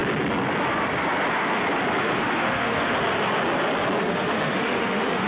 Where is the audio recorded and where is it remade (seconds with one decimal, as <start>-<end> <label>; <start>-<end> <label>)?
0.0-2.0 recorded; 2.0-2.9 remade; 2.9-4.0 recorded; 4.0-5.3 remade